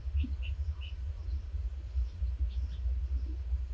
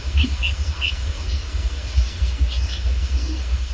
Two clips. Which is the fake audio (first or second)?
second